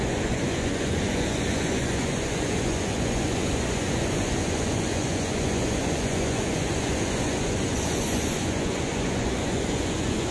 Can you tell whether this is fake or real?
fake